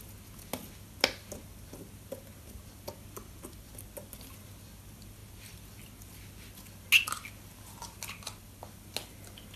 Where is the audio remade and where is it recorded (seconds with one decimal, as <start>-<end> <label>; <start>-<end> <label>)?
0.0-9.6 recorded